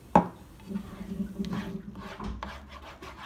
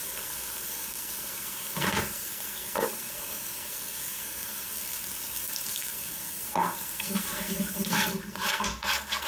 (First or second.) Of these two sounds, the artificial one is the second